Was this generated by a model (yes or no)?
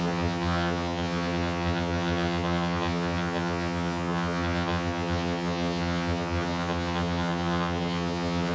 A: yes